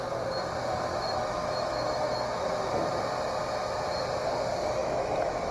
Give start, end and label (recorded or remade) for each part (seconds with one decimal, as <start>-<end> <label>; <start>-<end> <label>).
0.0-0.9 recorded; 0.9-3.0 remade; 3.0-4.8 recorded; 4.8-5.5 remade